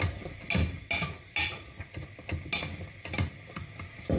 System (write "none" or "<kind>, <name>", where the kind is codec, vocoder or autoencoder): none